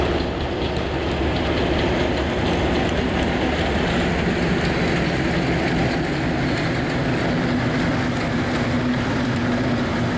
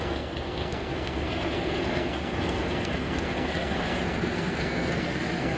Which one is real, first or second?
first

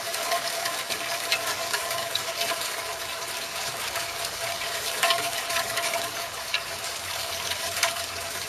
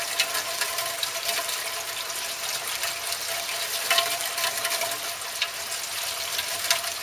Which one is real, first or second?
second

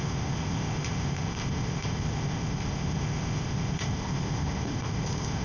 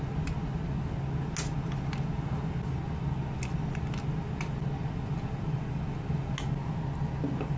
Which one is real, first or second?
second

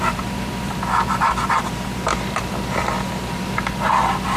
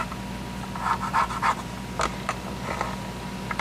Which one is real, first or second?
second